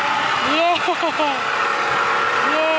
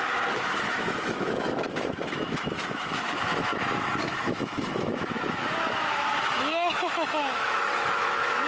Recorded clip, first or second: first